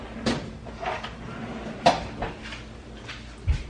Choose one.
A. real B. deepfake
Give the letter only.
A